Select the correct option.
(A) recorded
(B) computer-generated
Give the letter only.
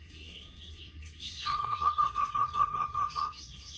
B